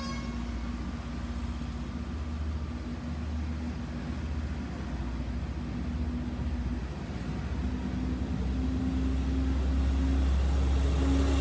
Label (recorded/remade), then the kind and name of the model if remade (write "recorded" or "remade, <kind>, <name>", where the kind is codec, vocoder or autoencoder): recorded